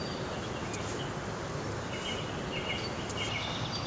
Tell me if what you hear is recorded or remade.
recorded